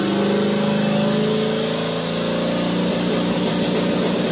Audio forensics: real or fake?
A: real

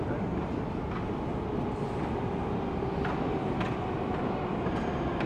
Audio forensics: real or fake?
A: real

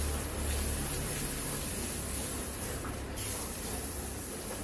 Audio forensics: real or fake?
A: fake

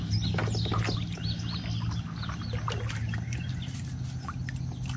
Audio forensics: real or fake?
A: real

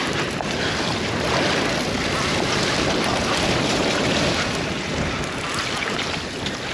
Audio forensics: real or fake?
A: real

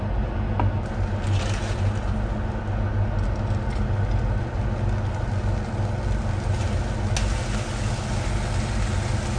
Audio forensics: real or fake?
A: real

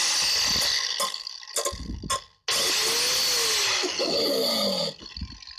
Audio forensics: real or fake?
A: real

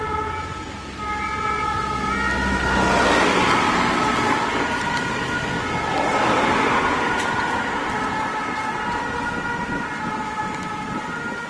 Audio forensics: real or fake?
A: real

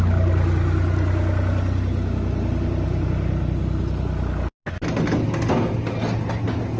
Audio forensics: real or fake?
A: real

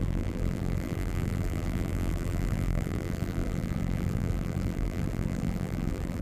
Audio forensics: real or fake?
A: fake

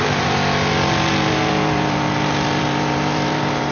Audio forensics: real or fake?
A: fake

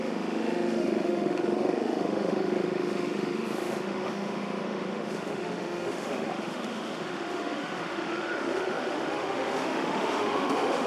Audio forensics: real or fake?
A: fake